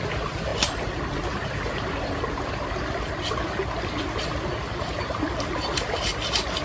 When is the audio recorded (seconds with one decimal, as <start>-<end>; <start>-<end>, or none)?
0.0-6.6